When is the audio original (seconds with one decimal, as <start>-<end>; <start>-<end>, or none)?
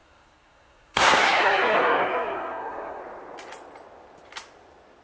3.0-5.0